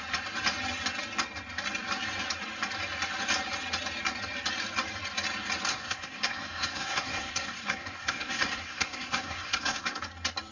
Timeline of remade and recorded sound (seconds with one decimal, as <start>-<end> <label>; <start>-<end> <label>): 0.0-5.7 recorded; 5.7-10.0 remade; 10.0-10.5 recorded